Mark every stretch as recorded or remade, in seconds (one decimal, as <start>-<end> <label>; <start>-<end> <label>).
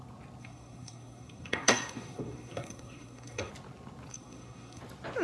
0.0-0.4 recorded; 0.4-3.5 remade; 3.5-4.1 recorded; 4.1-4.8 remade; 4.8-5.2 recorded